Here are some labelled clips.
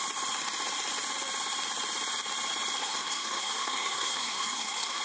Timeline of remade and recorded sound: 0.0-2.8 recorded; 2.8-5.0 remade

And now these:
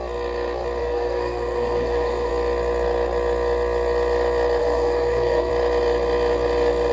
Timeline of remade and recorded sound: 0.0-0.8 recorded; 0.8-2.3 remade; 2.3-4.6 recorded; 4.6-5.5 remade; 5.5-6.9 recorded

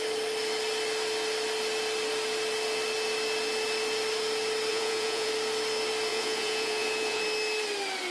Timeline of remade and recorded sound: 0.0-4.7 recorded; 4.7-5.3 remade; 5.3-6.1 recorded; 6.1-7.2 remade; 7.2-8.1 recorded

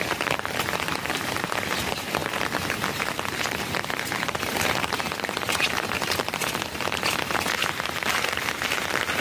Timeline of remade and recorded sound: 0.0-2.2 remade; 2.2-2.9 recorded; 2.9-6.4 remade; 6.4-7.7 recorded; 7.7-9.2 remade

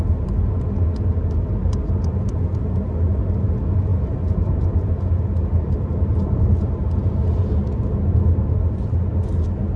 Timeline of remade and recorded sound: 0.0-9.8 recorded